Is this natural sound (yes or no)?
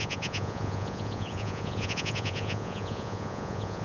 no